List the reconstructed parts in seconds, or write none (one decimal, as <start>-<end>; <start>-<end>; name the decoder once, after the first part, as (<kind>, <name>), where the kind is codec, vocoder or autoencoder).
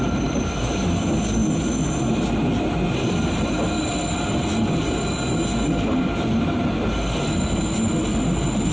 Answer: none